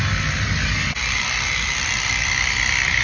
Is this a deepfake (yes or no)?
no